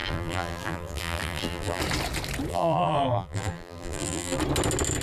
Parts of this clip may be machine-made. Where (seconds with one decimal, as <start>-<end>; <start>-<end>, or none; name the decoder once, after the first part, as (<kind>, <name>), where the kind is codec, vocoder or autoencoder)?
0.0-1.8 (vocoder, BigVGAN v2); 2.5-4.4